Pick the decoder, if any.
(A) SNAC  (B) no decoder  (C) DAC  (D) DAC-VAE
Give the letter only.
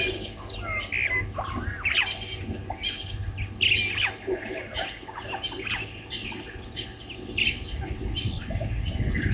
B